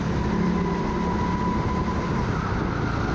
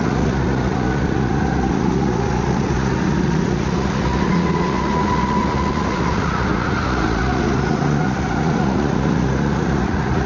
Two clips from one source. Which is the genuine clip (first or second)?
first